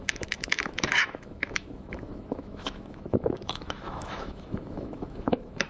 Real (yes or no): no